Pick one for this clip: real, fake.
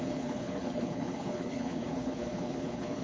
fake